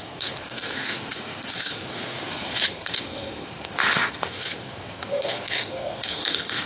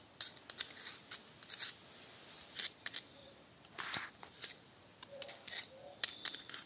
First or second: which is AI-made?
first